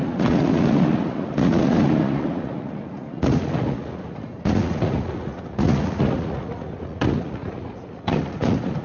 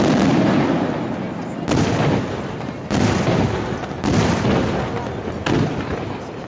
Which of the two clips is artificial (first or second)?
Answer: first